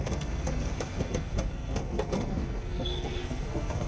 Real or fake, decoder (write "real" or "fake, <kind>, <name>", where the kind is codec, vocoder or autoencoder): fake, codec, SNAC